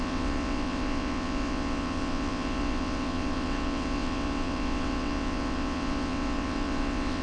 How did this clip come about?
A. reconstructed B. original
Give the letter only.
A